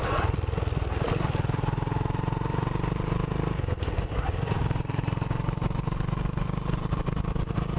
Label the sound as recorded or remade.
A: recorded